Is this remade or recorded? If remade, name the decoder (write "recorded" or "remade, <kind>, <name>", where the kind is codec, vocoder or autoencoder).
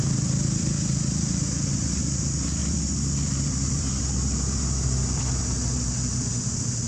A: remade, vocoder, BigVGAN v2